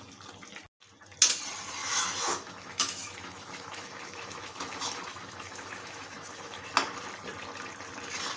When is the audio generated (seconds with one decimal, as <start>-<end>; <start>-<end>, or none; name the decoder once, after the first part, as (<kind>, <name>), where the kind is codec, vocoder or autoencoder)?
1.8-6.7 (autoencoder, DAC-VAE)